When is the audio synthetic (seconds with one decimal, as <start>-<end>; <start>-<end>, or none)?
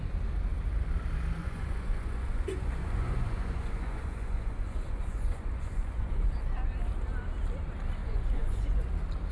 1.4-6.3; 8.0-8.9